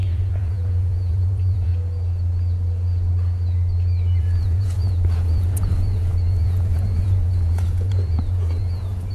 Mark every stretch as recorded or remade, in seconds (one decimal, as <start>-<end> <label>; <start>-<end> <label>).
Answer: 0.0-1.7 remade; 1.7-4.2 recorded; 4.2-9.1 remade